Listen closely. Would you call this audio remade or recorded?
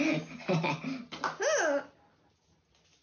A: recorded